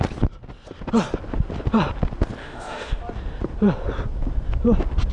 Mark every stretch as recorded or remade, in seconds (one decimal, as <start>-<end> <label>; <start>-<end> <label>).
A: 0.0-2.4 recorded; 2.4-3.0 remade; 3.0-5.1 recorded